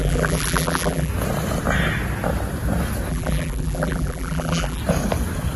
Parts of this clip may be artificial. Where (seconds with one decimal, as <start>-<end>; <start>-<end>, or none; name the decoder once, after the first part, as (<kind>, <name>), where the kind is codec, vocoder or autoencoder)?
0.0-1.1 (vocoder, BigVGAN v2); 3.1-4.8